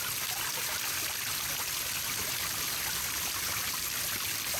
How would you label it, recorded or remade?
recorded